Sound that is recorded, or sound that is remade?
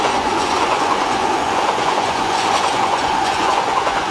remade